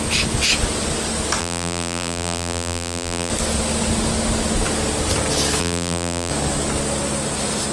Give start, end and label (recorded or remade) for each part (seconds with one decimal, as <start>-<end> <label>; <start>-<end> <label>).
0.0-1.4 recorded; 1.4-3.3 remade; 3.3-5.6 recorded; 5.6-6.3 remade; 6.3-7.7 recorded